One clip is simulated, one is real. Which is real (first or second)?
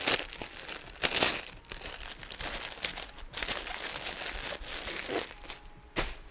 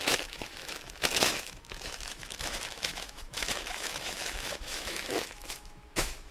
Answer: first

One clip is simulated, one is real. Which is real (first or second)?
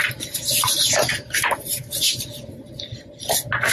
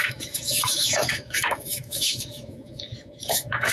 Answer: first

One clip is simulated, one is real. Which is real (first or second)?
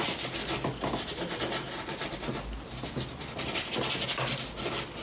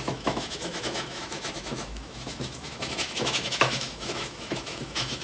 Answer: first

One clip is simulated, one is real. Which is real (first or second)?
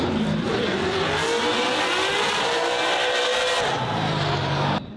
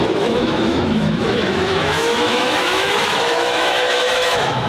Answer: first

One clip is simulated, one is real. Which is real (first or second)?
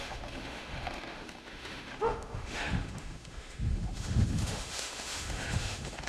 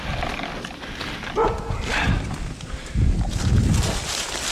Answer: second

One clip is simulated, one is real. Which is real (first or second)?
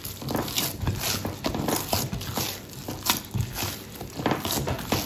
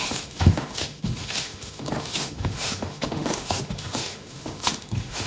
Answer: first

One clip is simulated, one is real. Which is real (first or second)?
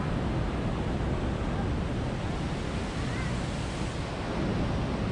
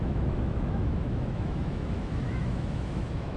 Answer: first